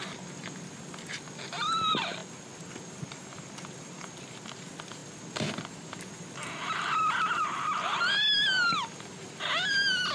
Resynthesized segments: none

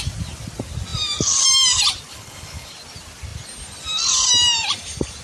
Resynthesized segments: 2.1-2.7 (codec, HILCodec)

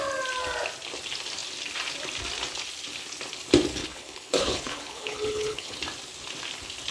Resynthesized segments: 3.8-5.8 (codec, HILCodec)

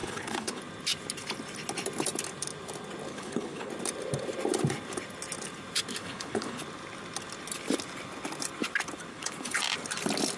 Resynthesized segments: 0.0-0.6 (codec, HILCodec); 3.1-3.7; 6.0-6.6; 9.1-9.6

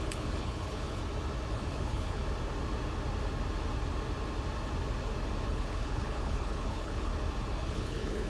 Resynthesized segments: 0.0-1.0 (codec, HILCodec); 1.5-2.2; 5.5-7.1; 7.7-8.3

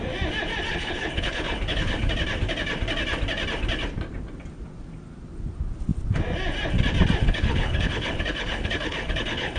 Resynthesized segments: 0.7-2.1 (codec, HILCodec); 7.2-9.6